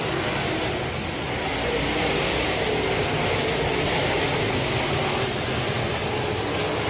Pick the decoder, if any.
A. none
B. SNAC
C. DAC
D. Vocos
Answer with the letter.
A